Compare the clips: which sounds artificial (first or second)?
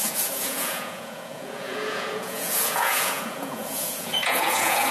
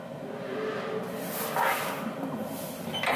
first